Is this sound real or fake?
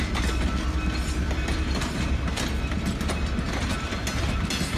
real